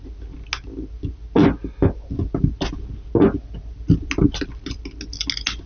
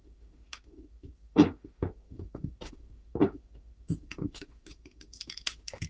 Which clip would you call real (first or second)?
first